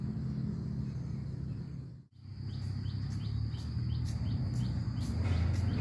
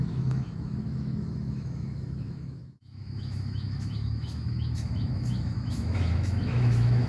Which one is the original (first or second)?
first